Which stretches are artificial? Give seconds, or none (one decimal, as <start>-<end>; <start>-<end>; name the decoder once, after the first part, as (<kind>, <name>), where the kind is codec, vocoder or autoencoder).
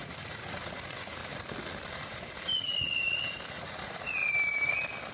0.0-1.2 (vocoder, Vocos); 1.9-4.2